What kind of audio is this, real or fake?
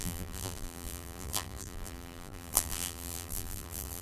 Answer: fake